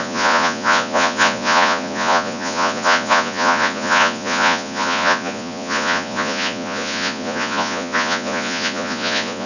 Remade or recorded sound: remade